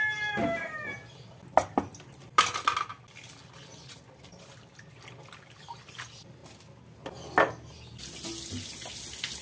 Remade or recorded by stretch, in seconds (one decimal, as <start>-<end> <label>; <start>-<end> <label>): 0.0-9.4 recorded